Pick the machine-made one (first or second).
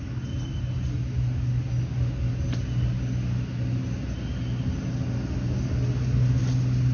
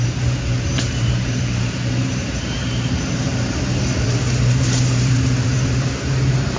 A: second